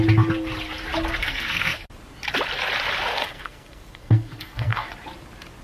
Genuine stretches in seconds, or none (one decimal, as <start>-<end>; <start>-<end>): 0.0-1.2; 1.9-3.1; 4.9-5.6